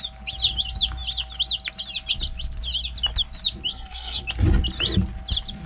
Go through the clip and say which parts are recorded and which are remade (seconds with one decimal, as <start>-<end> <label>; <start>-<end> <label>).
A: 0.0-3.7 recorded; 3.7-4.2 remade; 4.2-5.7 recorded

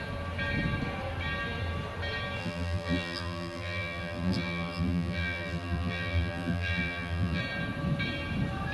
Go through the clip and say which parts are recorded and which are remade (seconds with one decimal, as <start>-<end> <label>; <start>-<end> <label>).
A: 0.0-2.4 recorded; 2.4-7.4 remade; 7.4-8.7 recorded

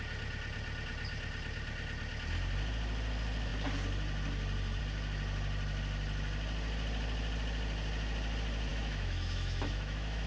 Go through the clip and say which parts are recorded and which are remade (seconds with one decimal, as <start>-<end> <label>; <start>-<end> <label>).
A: 0.0-8.7 recorded; 8.7-10.3 remade

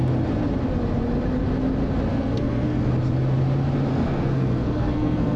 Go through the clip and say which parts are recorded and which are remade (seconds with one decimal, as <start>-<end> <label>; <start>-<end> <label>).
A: 0.0-2.1 recorded; 2.1-2.9 remade; 2.9-3.9 recorded; 3.9-5.4 remade